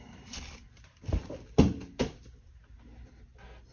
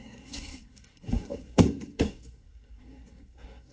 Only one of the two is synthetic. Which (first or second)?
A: second